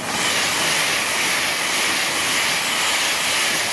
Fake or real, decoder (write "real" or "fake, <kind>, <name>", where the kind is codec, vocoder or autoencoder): real